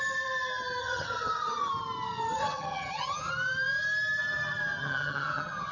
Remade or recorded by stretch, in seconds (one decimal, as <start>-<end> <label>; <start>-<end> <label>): 0.0-0.8 recorded; 0.8-1.7 remade; 1.7-2.4 recorded; 2.4-3.3 remade; 3.3-4.8 recorded; 4.8-5.7 remade